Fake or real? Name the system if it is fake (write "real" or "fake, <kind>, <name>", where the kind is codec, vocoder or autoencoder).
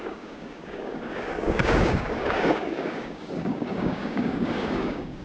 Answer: fake, codec, DAC